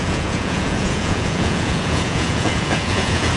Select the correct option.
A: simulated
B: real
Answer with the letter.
A